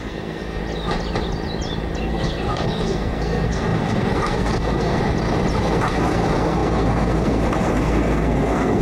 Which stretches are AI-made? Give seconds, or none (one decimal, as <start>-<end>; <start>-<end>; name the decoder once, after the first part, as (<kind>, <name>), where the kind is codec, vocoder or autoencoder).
0.0-0.6 (codec, SNAC); 2.0-5.0; 5.6-8.8